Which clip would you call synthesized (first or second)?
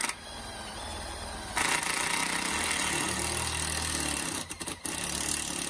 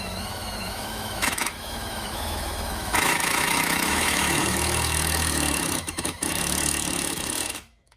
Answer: second